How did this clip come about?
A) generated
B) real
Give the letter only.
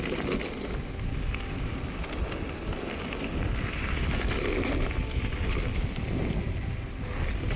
B